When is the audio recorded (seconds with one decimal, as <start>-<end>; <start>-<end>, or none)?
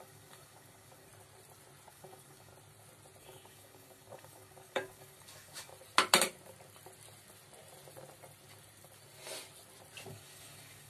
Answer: 1.1-1.9; 2.5-3.2; 5.7-10.1